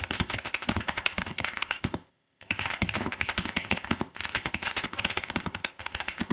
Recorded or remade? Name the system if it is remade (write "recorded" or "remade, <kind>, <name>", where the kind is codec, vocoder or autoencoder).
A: remade, codec, ZipCodec